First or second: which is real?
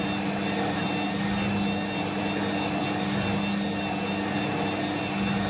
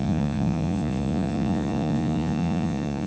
first